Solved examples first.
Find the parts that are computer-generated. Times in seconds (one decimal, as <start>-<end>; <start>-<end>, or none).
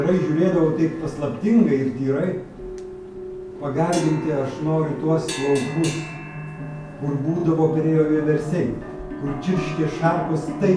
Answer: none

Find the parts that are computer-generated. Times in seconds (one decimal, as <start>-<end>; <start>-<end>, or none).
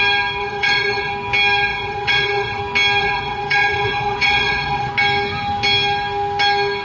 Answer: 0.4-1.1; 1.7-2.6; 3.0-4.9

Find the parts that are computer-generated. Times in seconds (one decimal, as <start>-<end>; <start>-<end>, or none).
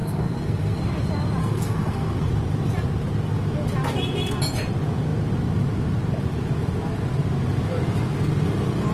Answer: 0.0-0.8; 1.4-2.3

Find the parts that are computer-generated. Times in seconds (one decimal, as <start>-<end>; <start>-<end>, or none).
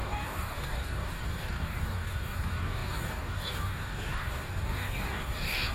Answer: 0.0-5.7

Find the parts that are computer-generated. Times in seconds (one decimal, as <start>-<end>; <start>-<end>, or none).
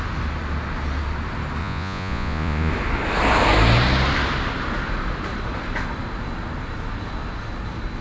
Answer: 1.6-2.7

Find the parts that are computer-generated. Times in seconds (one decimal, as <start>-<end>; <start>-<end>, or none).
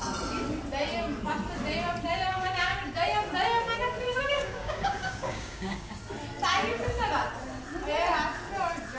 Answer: 2.3-2.7; 4.2-6.0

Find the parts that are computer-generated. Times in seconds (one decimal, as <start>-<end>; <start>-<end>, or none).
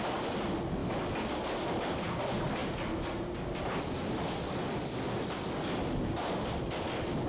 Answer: none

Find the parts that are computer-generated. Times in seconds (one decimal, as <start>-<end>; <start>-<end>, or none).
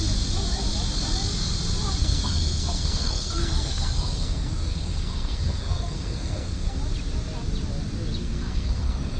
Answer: 2.0-6.8; 8.2-9.2